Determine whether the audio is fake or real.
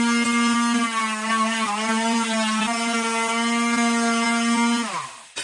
real